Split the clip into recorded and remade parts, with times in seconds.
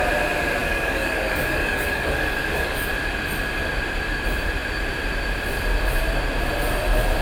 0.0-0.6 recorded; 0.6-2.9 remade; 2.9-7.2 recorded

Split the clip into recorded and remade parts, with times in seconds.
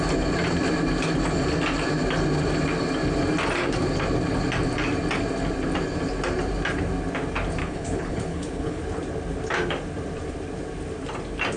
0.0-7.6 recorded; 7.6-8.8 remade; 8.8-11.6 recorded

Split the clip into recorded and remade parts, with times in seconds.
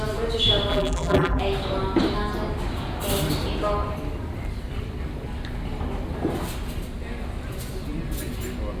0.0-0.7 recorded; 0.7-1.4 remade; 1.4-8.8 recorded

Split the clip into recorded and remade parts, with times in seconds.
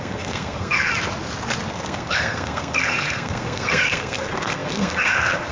0.0-0.9 remade; 0.9-1.7 recorded; 1.7-5.5 remade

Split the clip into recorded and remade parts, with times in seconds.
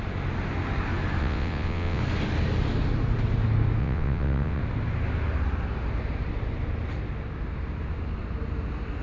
0.0-1.2 recorded; 1.2-2.0 remade; 2.0-3.8 recorded; 3.8-4.6 remade; 4.6-9.0 recorded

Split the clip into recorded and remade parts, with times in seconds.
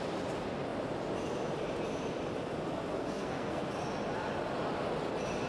0.0-2.9 recorded; 2.9-3.6 remade; 3.6-5.5 recorded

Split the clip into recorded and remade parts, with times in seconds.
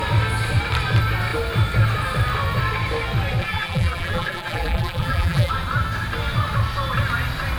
0.0-3.4 recorded; 3.4-5.5 remade; 5.5-7.6 recorded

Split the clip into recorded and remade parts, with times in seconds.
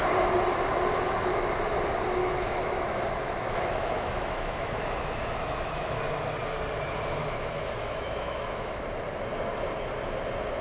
0.0-2.2 recorded; 2.2-6.0 remade; 6.0-7.2 recorded; 7.2-8.8 remade; 8.8-10.6 recorded